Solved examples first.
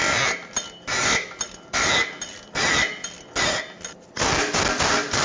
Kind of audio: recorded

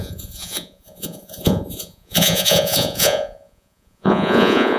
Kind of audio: remade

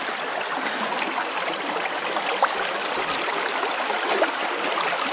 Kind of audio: recorded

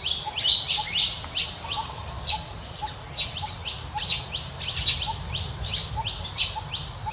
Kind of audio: recorded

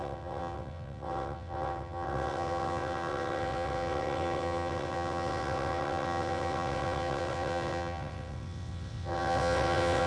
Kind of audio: remade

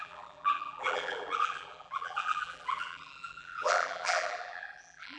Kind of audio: remade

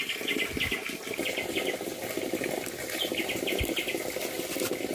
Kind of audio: recorded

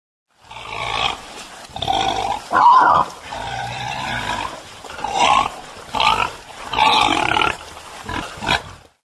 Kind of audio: recorded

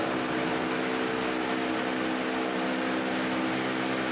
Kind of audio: recorded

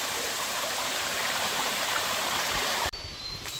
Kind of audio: remade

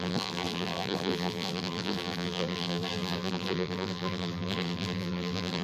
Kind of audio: remade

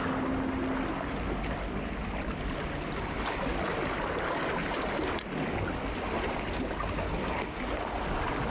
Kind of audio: recorded